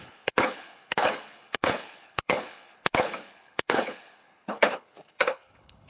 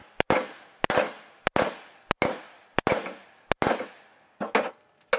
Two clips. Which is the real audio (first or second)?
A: second